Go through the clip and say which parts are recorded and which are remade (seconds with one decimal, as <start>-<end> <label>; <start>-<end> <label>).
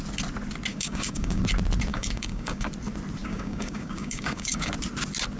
0.0-0.7 recorded; 0.7-1.4 remade; 1.4-1.9 recorded; 1.9-2.7 remade; 2.7-3.2 recorded; 3.2-4.7 remade; 4.7-5.4 recorded